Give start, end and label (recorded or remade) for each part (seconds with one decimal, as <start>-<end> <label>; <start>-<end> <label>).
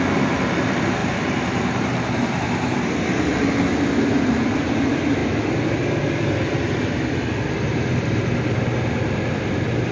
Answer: 0.0-1.0 recorded; 1.0-2.9 remade; 2.9-9.9 recorded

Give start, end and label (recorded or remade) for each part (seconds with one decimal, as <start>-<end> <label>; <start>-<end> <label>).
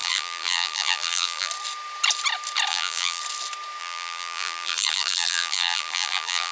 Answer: 0.0-1.5 remade; 1.5-2.7 recorded; 2.7-3.2 remade; 3.2-3.8 recorded; 3.8-6.5 remade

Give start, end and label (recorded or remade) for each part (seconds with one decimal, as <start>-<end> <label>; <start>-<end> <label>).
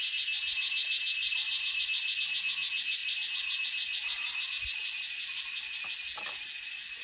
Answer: 0.0-1.2 recorded; 1.2-2.2 remade; 2.2-3.0 recorded; 3.0-4.5 remade; 4.5-7.0 recorded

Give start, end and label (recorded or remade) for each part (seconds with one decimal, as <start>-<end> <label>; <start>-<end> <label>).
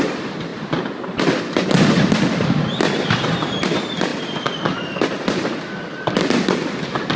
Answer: 0.0-0.5 recorded; 0.5-2.5 remade; 2.5-4.1 recorded; 4.1-5.0 remade; 5.0-7.2 recorded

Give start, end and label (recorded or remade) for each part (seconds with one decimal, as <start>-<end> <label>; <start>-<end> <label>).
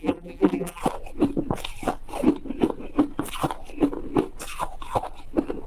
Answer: 0.0-0.8 remade; 0.8-5.7 recorded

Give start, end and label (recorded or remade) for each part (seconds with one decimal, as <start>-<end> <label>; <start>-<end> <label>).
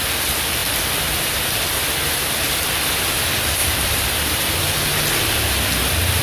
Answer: 0.0-3.6 recorded; 3.6-4.4 remade; 4.4-6.2 recorded